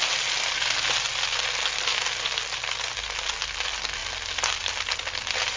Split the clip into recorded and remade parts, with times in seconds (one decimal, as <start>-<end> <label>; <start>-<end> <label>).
0.0-5.6 recorded